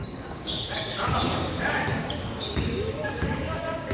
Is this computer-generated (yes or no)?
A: yes